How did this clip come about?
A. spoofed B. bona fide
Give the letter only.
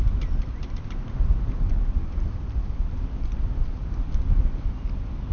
B